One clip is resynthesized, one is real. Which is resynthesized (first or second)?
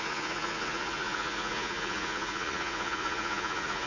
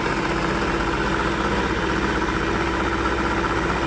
first